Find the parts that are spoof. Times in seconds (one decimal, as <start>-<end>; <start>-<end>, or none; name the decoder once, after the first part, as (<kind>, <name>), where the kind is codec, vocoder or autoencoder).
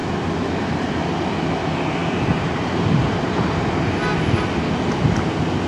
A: none